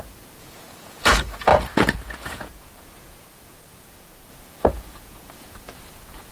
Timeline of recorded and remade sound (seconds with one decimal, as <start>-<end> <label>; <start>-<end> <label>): 0.0-6.3 remade